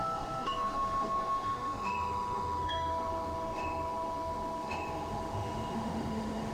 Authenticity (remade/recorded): remade